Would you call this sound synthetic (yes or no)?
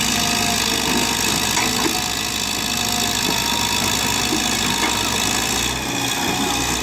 no